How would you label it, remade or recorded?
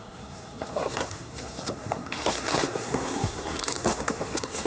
remade